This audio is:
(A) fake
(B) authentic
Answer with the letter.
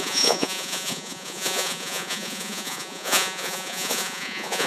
A